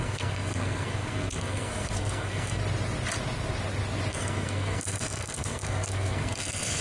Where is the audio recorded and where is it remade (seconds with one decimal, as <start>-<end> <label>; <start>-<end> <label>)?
0.0-2.6 remade; 2.6-4.1 recorded; 4.1-6.8 remade